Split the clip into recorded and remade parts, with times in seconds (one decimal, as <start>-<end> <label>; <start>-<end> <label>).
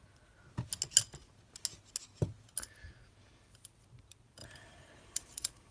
0.0-4.4 recorded; 4.4-5.7 remade